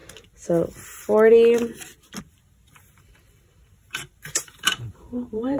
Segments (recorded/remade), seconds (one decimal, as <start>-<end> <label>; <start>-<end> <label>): 0.0-2.2 recorded; 2.2-5.6 remade